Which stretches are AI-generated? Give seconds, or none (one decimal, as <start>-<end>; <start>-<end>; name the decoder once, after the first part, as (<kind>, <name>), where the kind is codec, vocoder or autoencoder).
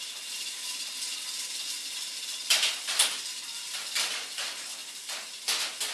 none